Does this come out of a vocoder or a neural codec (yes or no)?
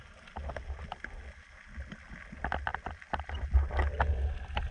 no